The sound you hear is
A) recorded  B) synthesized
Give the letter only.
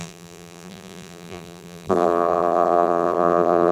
B